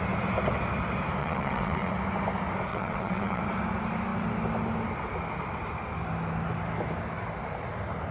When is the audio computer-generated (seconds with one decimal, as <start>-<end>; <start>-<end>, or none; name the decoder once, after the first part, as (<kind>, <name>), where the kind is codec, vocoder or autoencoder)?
1.2-1.9 (vocoder, WaveNeXt); 2.7-3.4